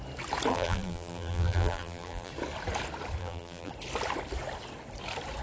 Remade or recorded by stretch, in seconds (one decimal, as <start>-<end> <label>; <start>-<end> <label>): 0.0-0.5 recorded; 0.5-2.3 remade; 2.3-3.2 recorded; 3.2-3.7 remade; 3.7-5.4 recorded